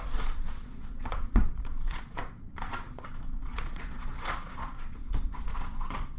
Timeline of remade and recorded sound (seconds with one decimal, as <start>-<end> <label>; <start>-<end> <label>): 0.0-6.2 remade